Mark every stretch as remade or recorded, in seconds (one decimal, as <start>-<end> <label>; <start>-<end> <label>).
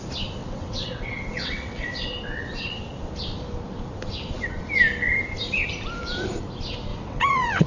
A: 0.0-0.4 recorded; 0.4-2.8 remade; 2.8-6.9 recorded; 6.9-7.7 remade